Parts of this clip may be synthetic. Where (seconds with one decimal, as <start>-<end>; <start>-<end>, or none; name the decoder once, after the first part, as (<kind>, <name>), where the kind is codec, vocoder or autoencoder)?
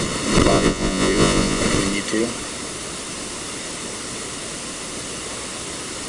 0.5-1.6 (vocoder, Vocos)